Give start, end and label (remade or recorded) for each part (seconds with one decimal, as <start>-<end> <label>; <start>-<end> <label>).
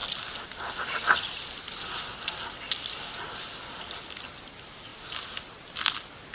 0.0-6.3 recorded